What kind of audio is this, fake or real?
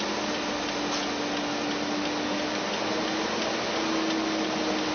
real